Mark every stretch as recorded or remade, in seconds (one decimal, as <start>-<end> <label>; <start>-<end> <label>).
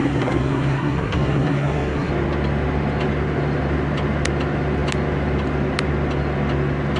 0.0-2.1 remade; 2.1-7.0 recorded